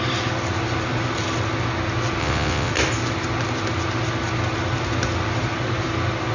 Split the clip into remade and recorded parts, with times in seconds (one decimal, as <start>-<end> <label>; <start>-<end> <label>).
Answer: 0.0-2.2 recorded; 2.2-2.7 remade; 2.7-6.3 recorded